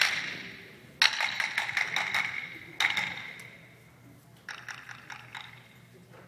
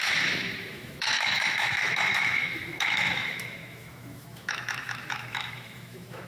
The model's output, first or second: second